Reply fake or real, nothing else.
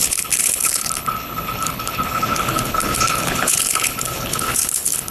fake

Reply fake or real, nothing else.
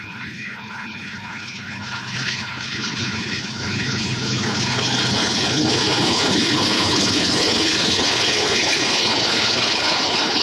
fake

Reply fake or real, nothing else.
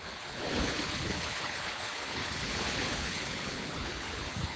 fake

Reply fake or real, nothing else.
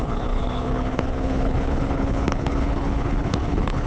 fake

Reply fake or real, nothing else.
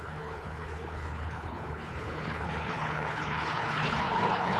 fake